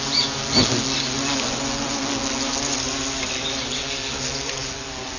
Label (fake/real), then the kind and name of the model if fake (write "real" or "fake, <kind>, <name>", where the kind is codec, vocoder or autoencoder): real